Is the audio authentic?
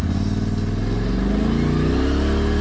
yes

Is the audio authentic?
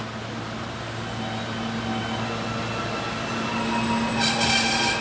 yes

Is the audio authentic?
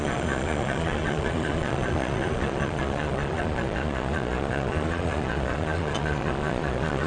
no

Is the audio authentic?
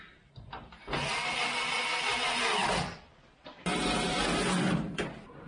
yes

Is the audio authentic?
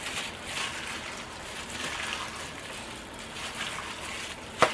yes